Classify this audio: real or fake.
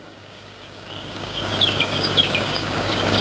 fake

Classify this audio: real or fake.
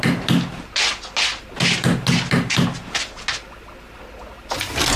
real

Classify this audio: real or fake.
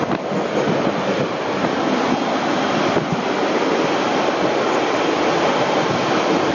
real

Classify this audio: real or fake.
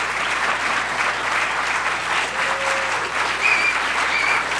real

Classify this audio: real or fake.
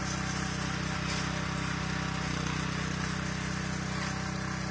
real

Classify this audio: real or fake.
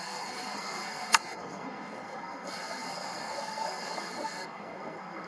fake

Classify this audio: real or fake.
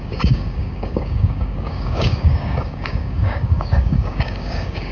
fake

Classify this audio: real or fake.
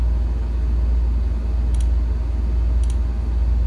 real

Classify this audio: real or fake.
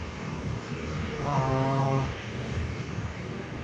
fake